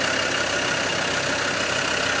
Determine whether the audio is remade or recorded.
recorded